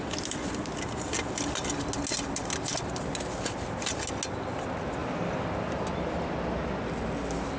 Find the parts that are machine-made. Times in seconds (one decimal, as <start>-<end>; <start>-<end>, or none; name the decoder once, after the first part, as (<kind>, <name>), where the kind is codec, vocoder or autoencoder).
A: none